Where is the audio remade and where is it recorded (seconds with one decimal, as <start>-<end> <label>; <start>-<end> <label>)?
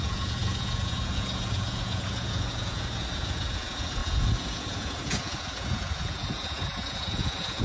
0.0-7.6 remade